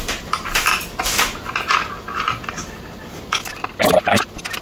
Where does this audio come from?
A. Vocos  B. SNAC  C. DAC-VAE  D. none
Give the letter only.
D